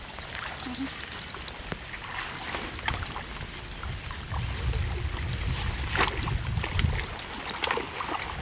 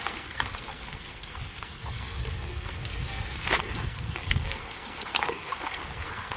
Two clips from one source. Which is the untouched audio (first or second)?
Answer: first